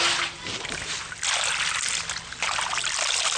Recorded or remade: recorded